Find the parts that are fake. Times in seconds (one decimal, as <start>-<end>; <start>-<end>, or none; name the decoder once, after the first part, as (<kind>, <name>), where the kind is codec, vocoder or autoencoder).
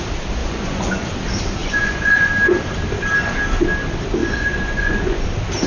0.4-1.1 (vocoder, Vocos); 1.6-2.3; 4.2-5.2